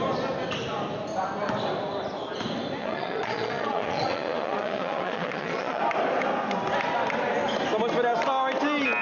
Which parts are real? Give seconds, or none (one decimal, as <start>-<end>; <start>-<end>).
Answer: 0.0-2.8; 5.8-9.0